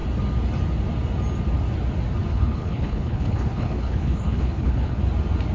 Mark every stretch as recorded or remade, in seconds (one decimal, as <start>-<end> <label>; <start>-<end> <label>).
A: 0.0-2.3 recorded; 2.3-5.0 remade; 5.0-5.5 recorded